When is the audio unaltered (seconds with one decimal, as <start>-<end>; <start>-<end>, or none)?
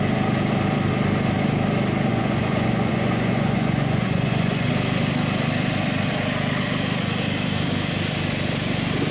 0.0-2.1; 4.7-9.1